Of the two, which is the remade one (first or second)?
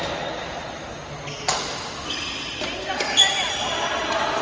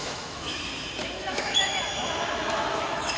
second